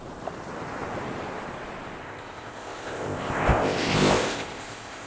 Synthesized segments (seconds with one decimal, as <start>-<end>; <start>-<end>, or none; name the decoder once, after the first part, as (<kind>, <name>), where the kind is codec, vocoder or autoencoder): 2.0-5.1 (codec, ZipCodec)